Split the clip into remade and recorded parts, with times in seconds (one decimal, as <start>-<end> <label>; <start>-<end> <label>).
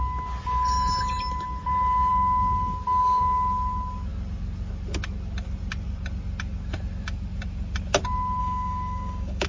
0.0-8.4 recorded; 8.4-9.5 remade